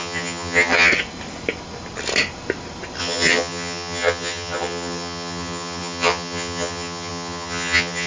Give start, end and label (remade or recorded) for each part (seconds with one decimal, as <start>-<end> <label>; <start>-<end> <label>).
0.0-0.9 remade; 0.9-3.0 recorded; 3.0-8.1 remade